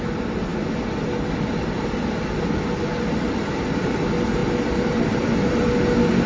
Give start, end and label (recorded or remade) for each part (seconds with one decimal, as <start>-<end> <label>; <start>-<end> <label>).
0.0-6.3 recorded

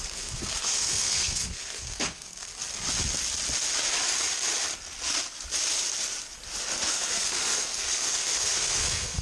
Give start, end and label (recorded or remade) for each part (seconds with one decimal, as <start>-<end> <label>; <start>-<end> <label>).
0.0-2.5 remade; 2.5-6.9 recorded; 6.9-9.2 remade

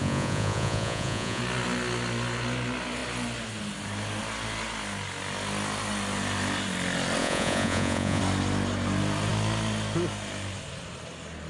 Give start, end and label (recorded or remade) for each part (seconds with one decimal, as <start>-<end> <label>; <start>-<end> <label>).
0.0-1.4 remade; 1.4-7.2 recorded; 7.2-8.2 remade; 8.2-11.5 recorded

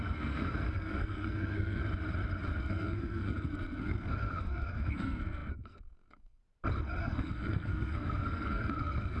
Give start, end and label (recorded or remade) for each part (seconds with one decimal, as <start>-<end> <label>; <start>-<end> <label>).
0.0-1.8 remade; 1.8-2.6 recorded; 2.6-6.4 remade; 6.4-7.0 recorded; 7.0-9.2 remade

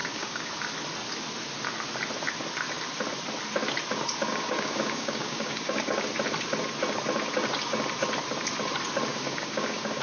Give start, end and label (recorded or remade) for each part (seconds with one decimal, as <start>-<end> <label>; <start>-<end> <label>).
0.0-0.5 remade; 0.5-4.3 recorded; 4.3-5.8 remade; 5.8-9.1 recorded; 9.1-10.0 remade